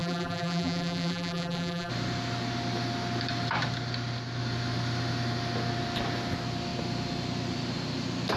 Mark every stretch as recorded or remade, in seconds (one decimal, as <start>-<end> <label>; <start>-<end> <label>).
0.0-1.9 remade; 1.9-8.4 recorded